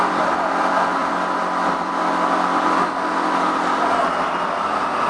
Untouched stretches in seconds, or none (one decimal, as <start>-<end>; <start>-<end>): 0.0-5.1